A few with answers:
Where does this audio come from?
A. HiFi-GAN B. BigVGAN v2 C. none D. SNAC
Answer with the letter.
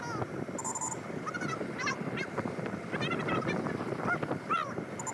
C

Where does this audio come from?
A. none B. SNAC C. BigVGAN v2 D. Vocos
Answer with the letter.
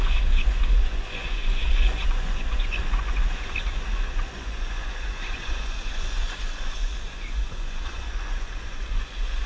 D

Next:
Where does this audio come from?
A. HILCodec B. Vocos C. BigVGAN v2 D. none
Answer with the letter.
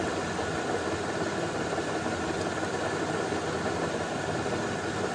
D